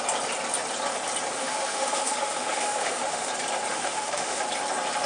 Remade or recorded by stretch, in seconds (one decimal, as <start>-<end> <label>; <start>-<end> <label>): 0.0-1.4 recorded; 1.4-3.3 remade; 3.3-3.7 recorded; 3.7-4.4 remade; 4.4-5.1 recorded